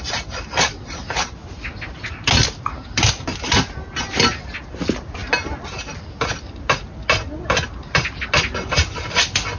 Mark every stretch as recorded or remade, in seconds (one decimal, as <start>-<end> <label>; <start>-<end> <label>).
0.0-9.6 recorded